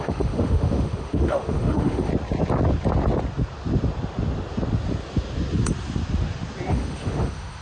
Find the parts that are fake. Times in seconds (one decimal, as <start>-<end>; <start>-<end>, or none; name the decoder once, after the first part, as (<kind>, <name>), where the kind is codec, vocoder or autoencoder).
0.0-2.1 (autoencoder, DAC-VAE); 6.7-7.6